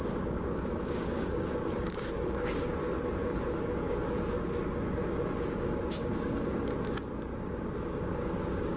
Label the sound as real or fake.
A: fake